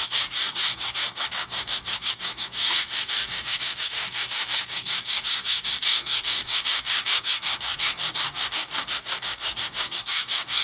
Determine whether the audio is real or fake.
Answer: fake